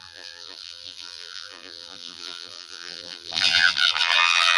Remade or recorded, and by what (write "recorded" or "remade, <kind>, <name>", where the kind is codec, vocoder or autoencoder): remade, vocoder, BigVGAN v2